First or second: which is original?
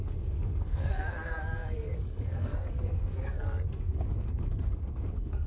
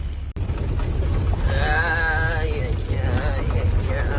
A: second